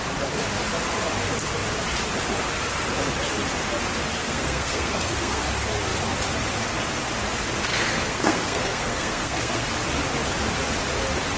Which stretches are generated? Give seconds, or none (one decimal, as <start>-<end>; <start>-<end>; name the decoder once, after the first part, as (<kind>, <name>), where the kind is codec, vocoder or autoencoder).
4.2-5.4 (codec, SNAC); 7.7-9.7